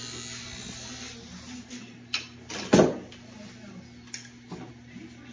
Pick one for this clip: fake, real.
real